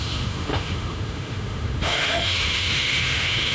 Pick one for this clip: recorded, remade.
remade